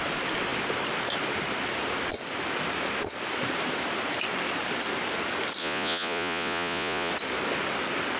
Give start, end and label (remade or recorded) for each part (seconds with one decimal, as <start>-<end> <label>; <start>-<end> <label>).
0.0-5.6 recorded; 5.6-7.1 remade; 7.1-8.2 recorded